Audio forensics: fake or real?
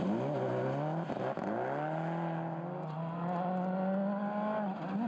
real